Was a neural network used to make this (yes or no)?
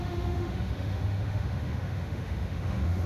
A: yes